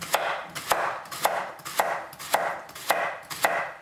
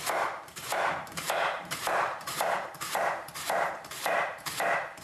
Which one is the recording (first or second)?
first